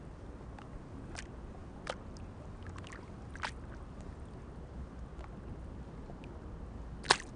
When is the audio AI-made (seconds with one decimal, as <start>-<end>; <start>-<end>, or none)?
none